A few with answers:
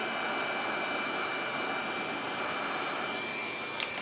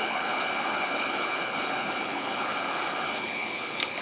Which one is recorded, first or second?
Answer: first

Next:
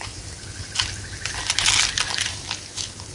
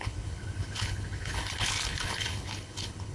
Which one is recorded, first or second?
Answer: first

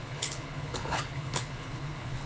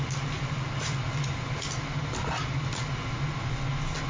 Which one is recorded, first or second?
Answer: second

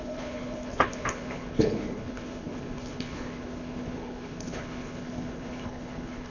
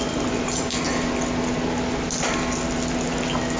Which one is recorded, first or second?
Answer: second